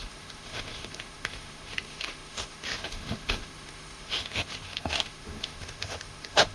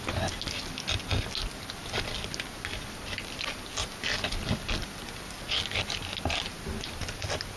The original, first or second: second